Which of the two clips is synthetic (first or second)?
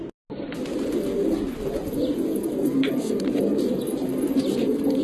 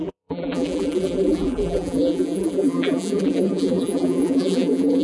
second